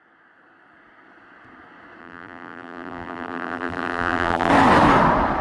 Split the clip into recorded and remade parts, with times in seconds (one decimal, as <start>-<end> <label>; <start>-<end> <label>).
0.0-2.0 recorded; 2.0-4.5 remade; 4.5-5.4 recorded